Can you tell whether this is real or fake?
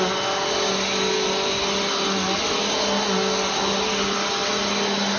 real